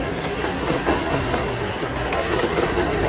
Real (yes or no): no